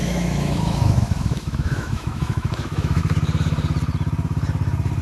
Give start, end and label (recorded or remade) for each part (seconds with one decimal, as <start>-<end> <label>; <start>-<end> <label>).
0.0-3.0 remade; 3.0-5.0 recorded